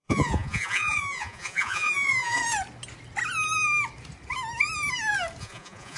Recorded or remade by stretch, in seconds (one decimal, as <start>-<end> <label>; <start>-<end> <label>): 0.0-2.4 remade; 2.4-5.4 recorded; 5.4-6.0 remade